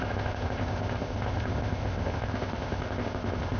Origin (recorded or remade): remade